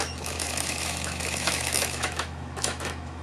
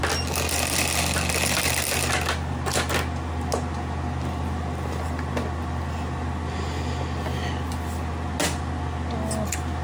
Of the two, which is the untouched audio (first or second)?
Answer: second